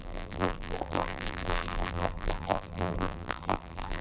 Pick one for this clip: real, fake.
fake